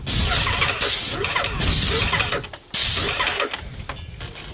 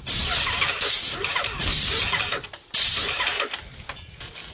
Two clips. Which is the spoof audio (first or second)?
second